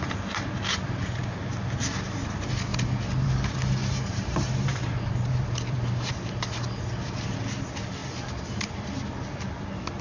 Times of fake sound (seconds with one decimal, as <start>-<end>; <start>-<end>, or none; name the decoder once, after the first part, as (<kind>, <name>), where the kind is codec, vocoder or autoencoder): 2.7-3.3 (vocoder, BigVGAN v2); 3.8-6.1